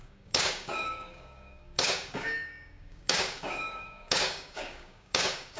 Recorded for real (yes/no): no